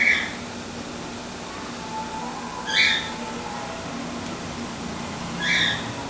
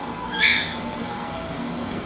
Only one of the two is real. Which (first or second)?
first